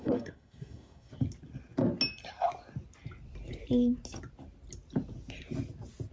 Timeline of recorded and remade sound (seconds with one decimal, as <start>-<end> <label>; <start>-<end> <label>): 0.0-1.1 remade; 1.1-6.1 recorded